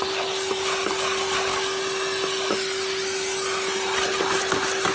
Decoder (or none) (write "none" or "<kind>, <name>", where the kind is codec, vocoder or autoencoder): none